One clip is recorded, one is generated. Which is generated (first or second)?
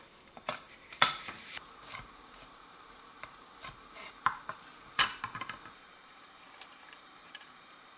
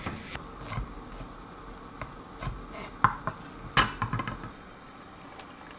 first